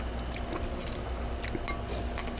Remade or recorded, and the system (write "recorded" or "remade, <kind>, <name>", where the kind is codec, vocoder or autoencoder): recorded